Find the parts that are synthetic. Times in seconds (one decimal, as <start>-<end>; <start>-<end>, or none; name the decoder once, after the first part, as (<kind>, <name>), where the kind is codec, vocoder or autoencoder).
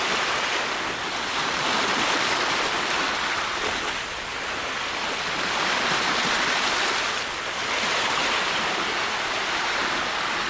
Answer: 8.2-9.8 (vocoder, BigVGAN v2)